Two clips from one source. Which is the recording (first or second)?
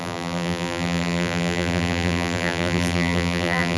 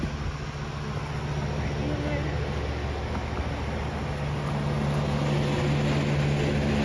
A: second